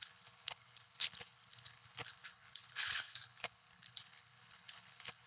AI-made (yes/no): yes